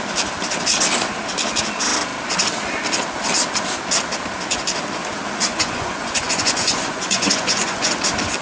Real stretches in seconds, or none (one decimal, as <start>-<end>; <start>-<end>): 0.0-5.5; 7.9-8.4